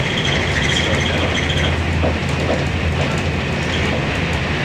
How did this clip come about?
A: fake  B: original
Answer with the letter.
B